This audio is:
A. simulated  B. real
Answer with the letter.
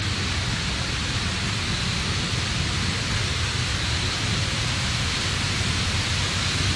B